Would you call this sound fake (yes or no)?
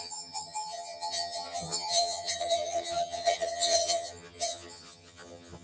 yes